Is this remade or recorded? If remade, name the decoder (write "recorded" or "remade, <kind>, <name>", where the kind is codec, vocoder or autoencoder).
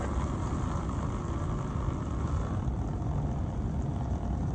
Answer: recorded